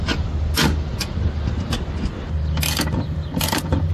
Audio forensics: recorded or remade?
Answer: recorded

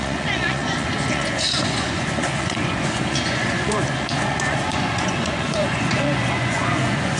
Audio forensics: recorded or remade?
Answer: remade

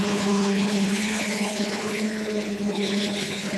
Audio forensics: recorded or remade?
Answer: remade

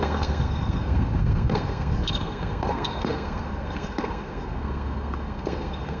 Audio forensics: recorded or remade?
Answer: remade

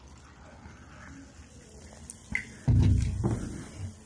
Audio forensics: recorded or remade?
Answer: recorded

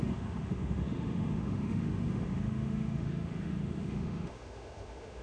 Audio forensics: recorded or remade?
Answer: remade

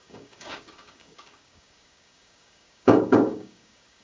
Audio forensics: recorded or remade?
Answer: remade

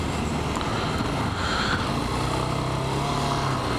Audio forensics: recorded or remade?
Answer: recorded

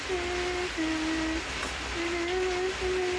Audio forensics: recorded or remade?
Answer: recorded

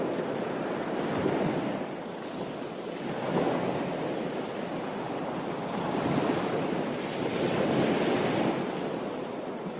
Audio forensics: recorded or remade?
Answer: recorded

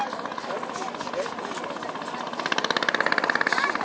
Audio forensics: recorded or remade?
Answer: recorded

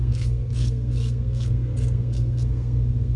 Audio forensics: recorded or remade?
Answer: remade